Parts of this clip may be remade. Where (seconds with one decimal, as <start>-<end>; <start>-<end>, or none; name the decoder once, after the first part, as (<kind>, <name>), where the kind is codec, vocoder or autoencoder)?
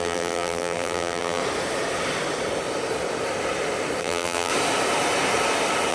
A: 0.0-1.4 (vocoder, BigVGAN v2); 4.0-4.5